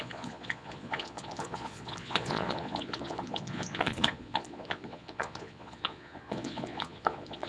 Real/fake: fake